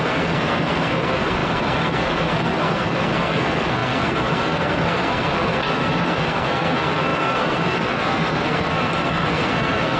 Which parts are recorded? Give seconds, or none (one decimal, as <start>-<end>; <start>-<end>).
none